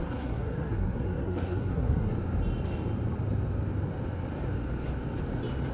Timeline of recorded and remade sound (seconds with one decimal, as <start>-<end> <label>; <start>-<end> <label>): 0.0-2.1 remade; 2.1-5.7 recorded